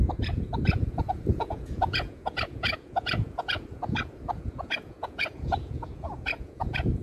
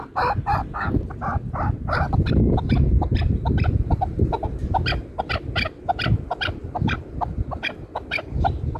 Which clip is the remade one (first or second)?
first